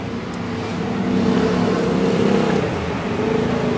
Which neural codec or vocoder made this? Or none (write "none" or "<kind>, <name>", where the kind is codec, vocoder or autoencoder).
none